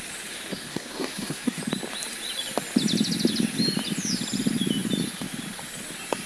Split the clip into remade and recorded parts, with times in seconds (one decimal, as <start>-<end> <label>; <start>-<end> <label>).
0.0-0.7 recorded; 0.7-1.6 remade; 1.6-6.3 recorded